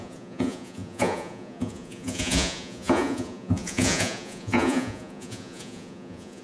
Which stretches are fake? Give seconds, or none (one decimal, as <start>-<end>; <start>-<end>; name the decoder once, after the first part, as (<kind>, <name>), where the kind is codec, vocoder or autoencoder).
0.0-6.4 (vocoder, Vocos)